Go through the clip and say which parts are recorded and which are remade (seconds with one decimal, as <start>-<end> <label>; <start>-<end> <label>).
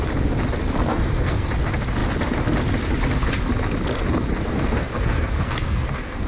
0.0-0.9 recorded; 0.9-1.5 remade; 1.5-4.5 recorded; 4.5-6.3 remade